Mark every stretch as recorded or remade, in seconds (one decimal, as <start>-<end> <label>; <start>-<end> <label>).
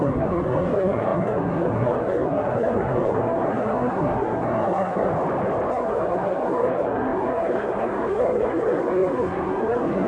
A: 0.0-5.1 remade; 5.1-5.7 recorded; 5.7-10.1 remade